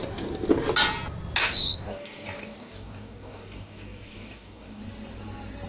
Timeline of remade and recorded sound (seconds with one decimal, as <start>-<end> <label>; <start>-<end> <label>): 0.0-1.4 recorded; 1.4-4.8 remade; 4.8-5.7 recorded